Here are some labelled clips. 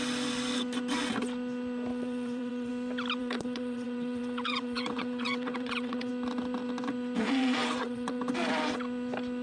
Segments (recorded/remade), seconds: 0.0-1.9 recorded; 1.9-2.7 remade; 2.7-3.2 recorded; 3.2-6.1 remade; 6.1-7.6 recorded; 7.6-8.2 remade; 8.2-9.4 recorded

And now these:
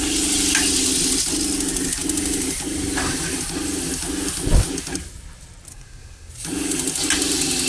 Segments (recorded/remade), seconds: 0.0-5.7 recorded; 5.7-6.3 remade; 6.3-7.7 recorded

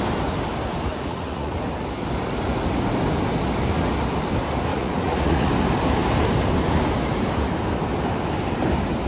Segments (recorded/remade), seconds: 0.0-0.9 recorded; 0.9-1.5 remade; 1.5-4.7 recorded; 4.7-5.5 remade; 5.5-9.1 recorded

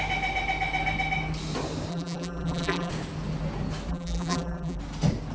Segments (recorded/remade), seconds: 0.0-1.9 recorded; 1.9-2.9 remade; 2.9-3.9 recorded; 3.9-4.8 remade; 4.8-5.3 recorded

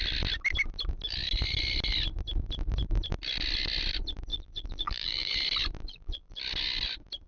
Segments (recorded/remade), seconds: 0.0-4.3 recorded; 4.3-5.3 remade; 5.3-5.8 recorded; 5.8-6.4 remade; 6.4-7.3 recorded

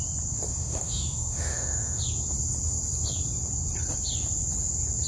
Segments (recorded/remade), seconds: 0.0-0.6 recorded; 0.6-2.0 remade; 2.0-5.1 recorded